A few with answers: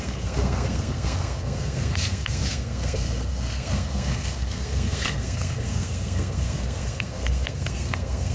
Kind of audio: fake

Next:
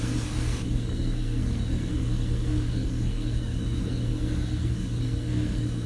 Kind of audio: fake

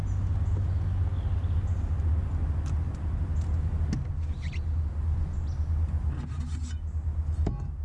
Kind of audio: real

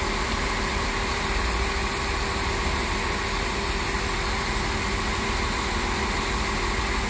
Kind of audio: real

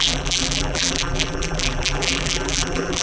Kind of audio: fake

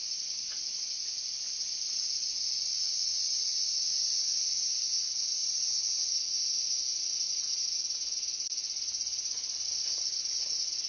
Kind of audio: fake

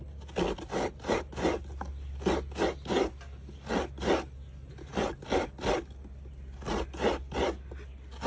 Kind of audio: real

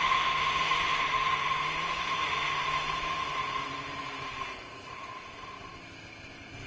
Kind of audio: real